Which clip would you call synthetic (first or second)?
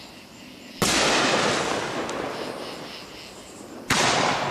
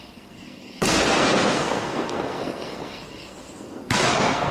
second